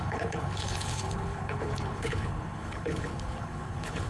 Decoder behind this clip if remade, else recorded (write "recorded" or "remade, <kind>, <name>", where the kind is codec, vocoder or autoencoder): remade, codec, HILCodec